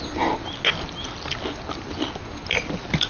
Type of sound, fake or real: real